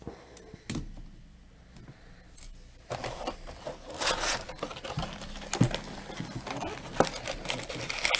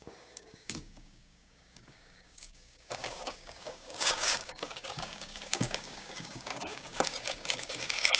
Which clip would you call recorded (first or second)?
first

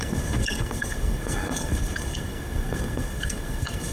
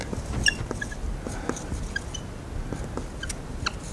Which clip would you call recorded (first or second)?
second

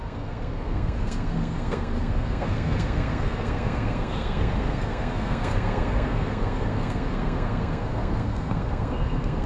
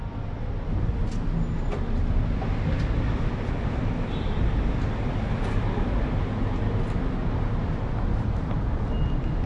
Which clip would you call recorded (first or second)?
second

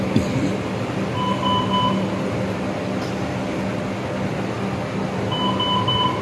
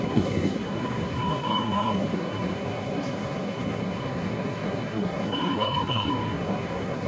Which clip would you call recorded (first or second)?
first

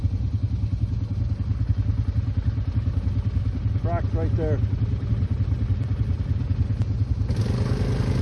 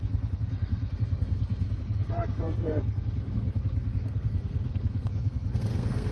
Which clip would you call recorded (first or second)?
first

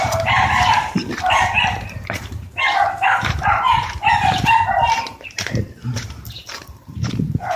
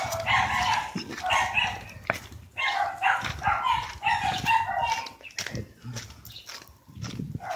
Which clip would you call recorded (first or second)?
second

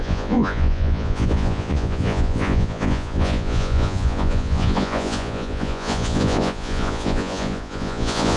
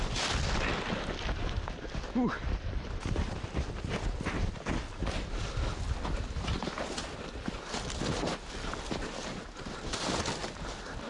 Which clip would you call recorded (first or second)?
second